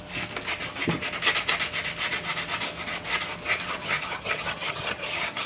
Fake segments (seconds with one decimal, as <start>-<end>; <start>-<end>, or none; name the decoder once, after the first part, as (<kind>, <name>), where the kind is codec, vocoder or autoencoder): 3.8-5.5 (vocoder, HiFi-GAN)